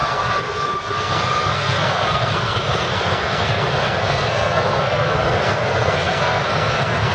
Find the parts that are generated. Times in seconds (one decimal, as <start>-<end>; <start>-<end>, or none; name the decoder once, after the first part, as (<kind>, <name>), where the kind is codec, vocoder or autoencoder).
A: 0.0-7.1 (codec, SNAC)